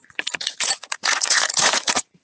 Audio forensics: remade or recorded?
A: remade